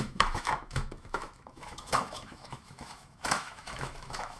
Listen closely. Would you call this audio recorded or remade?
remade